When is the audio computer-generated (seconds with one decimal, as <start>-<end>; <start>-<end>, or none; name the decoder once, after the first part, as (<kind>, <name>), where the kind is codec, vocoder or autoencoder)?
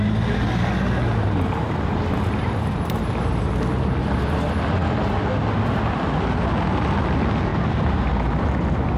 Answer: none